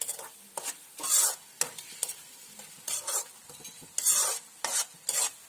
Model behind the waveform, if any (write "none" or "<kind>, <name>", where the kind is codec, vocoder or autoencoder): none